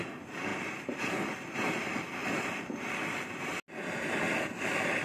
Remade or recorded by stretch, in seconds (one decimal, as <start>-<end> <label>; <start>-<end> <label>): 0.0-5.0 recorded